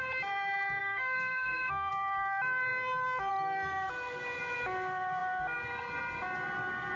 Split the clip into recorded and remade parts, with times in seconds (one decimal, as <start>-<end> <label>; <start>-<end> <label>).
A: 0.0-0.8 recorded; 0.8-1.9 remade; 1.9-7.0 recorded